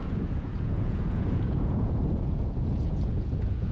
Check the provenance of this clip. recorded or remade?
remade